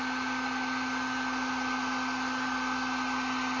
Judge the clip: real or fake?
real